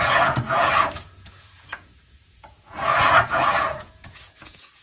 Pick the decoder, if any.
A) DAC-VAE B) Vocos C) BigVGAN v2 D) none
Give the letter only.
B